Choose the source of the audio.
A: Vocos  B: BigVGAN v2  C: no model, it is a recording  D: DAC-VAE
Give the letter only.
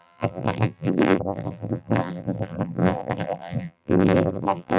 B